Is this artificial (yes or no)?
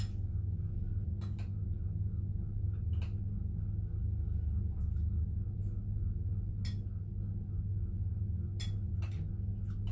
no